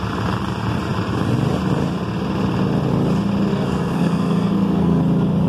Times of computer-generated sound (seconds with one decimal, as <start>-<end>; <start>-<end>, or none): 3.5-5.0